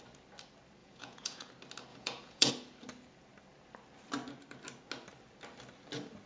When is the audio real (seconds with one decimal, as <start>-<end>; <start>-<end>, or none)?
0.0-0.8; 1.5-1.9; 2.5-6.3